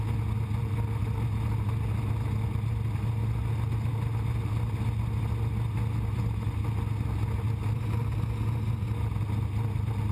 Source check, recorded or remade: recorded